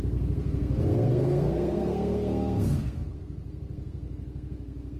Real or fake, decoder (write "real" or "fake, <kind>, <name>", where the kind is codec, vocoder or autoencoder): fake, codec, SNAC